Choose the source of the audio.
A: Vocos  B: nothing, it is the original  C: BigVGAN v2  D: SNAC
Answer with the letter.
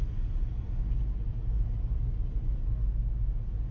B